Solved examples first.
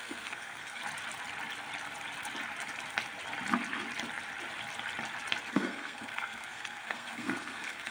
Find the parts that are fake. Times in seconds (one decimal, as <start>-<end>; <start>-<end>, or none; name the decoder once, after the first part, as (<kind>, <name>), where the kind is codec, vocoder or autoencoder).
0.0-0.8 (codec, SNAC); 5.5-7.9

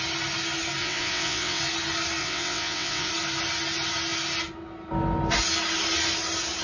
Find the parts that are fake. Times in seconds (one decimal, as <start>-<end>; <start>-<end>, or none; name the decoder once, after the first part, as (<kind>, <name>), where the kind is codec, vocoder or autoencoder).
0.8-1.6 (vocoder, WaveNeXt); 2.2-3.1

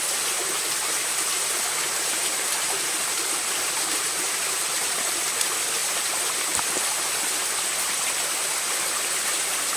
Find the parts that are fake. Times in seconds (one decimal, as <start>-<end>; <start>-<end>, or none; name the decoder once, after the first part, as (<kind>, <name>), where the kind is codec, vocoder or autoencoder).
0.4-5.1 (vocoder, BigVGAN v2); 5.8-7.2